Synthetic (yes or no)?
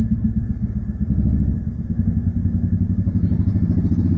no